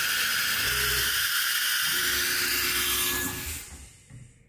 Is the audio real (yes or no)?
yes